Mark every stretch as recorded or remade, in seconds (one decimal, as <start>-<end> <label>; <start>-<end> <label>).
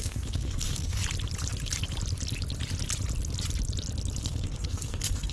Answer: 0.0-1.0 remade; 1.0-4.2 recorded; 4.2-5.3 remade